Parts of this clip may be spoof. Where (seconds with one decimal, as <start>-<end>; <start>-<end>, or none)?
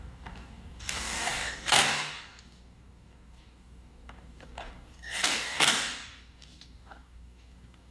0.0-7.9